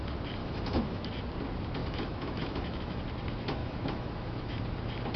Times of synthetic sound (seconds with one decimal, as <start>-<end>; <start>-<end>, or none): 0.4-1.1; 1.8-3.0; 3.6-4.6